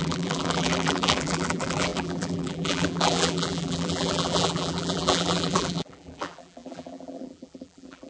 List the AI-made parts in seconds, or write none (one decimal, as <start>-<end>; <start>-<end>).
0.0-8.1